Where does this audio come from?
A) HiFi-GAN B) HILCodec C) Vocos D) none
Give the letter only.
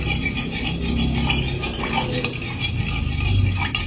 D